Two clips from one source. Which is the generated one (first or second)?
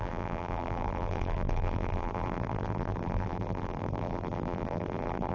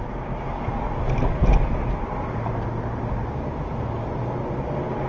first